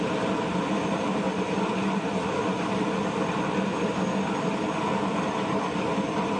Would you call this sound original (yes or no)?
yes